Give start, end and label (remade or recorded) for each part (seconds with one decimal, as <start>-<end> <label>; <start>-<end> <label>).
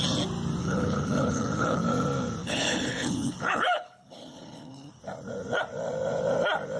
0.0-0.6 recorded; 0.6-1.8 remade; 1.8-2.4 recorded; 2.4-5.0 remade; 5.0-6.8 recorded